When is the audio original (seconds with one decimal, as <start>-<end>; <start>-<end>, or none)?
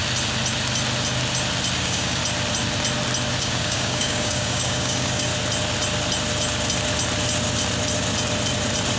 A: 0.0-1.8; 2.2-3.4; 5.3-9.0